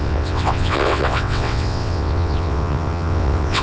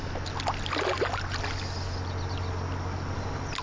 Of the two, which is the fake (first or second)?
first